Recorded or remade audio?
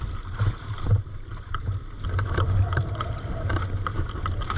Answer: remade